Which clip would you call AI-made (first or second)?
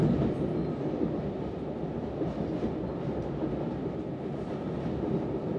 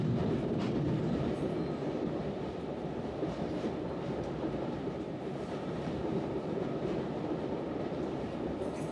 second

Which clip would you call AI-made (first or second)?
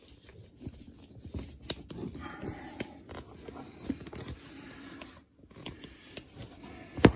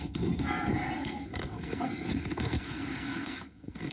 second